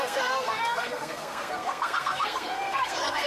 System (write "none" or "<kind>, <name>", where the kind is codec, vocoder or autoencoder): codec, SNAC